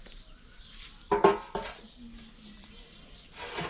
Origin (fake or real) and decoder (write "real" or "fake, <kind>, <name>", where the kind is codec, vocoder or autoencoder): real